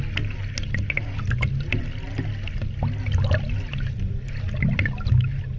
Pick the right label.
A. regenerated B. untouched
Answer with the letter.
B